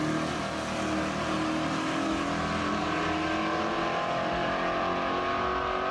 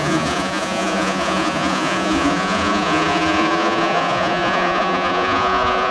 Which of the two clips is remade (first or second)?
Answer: second